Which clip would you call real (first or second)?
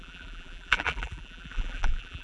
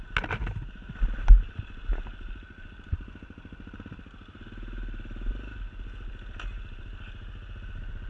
second